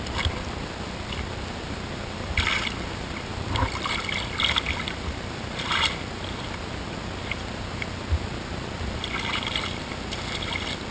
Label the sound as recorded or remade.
recorded